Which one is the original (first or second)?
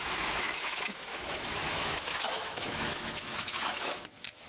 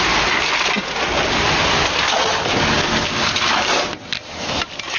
second